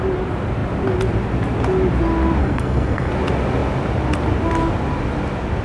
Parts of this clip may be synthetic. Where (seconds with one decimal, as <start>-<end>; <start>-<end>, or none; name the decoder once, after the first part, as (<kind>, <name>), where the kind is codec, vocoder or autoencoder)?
2.4-3.1 (codec, SNAC)